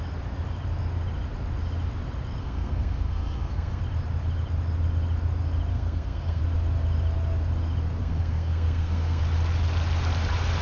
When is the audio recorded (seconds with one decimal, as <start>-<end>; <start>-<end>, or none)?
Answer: 0.0-2.4; 3.8-5.7; 6.4-8.0; 9.2-10.6